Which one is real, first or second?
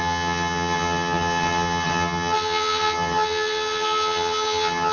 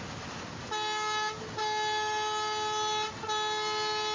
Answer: second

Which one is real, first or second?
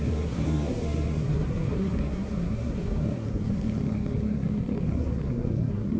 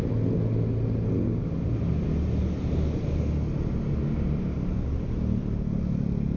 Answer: second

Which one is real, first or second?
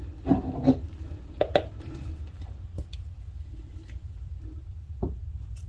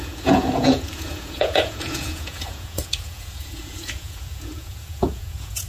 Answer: first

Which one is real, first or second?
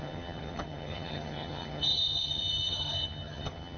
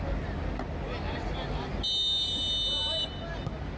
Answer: second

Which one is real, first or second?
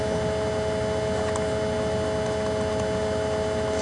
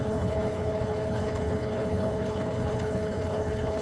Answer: first